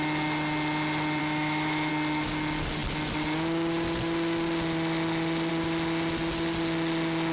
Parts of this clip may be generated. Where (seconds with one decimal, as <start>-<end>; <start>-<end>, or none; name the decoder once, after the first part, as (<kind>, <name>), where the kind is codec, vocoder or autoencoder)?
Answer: 1.2-1.9 (autoencoder, DAC-VAE)